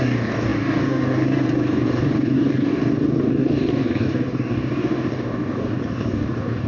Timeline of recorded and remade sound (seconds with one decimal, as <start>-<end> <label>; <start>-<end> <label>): 0.0-6.7 remade